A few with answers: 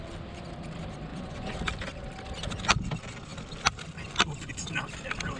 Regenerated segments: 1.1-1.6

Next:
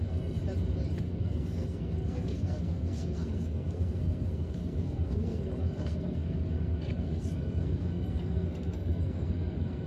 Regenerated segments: 0.0-0.4; 1.0-9.9

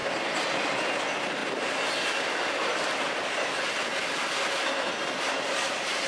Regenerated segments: none

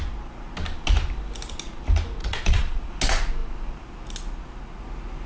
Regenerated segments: 2.2-2.9

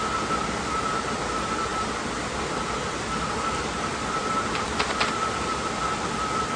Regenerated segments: none

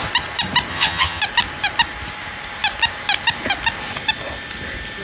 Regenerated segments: 0.7-1.2

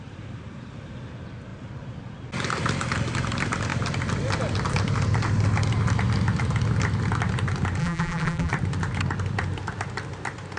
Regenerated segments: 7.8-8.5

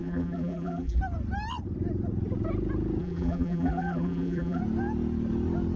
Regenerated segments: 0.0-1.0; 3.0-4.6